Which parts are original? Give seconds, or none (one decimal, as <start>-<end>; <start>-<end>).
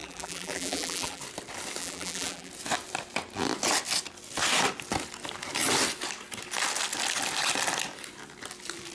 1.2-1.8; 2.5-8.9